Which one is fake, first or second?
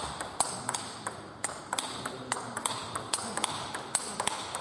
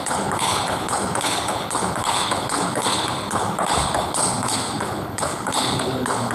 second